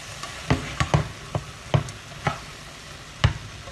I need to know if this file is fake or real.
real